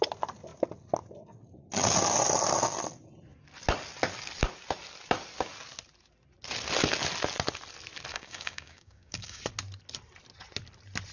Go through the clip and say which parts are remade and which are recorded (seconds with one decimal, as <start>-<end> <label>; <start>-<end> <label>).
0.0-8.1 recorded; 8.1-9.4 remade; 9.4-11.1 recorded